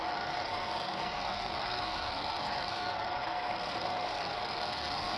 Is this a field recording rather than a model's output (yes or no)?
no